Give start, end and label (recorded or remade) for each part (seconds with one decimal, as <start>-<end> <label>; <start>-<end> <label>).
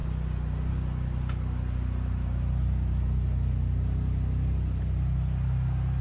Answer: 0.0-6.0 recorded